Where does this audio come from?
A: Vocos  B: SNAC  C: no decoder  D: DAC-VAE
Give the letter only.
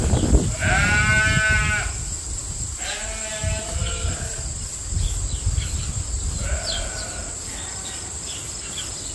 C